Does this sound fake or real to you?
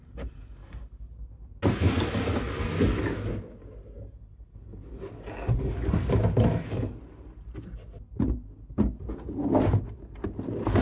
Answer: real